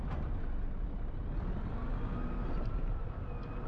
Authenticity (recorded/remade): recorded